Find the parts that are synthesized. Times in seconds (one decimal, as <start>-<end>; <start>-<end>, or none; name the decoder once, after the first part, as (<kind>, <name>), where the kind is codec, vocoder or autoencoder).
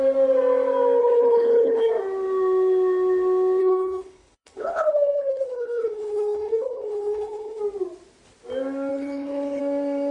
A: 1.0-1.9 (codec, HILCodec); 3.6-7.6; 8.9-9.6